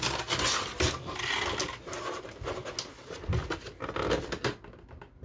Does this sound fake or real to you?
real